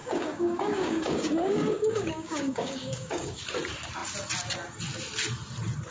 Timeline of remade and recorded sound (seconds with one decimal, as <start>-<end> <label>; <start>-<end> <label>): 0.0-3.4 remade; 3.4-5.9 recorded